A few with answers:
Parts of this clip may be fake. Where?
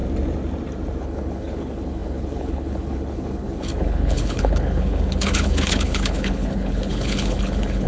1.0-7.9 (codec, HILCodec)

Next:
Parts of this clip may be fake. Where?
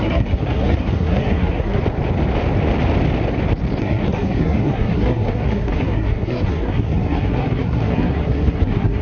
0.0-1.8 (codec, SNAC); 3.8-9.0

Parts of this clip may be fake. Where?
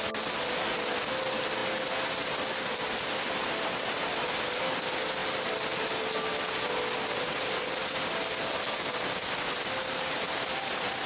none